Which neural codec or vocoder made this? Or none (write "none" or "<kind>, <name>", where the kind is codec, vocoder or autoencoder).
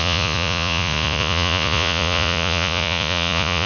vocoder, Vocos